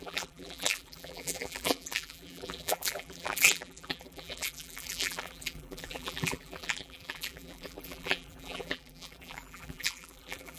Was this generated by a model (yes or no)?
yes